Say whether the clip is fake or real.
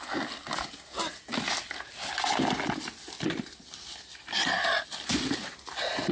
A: real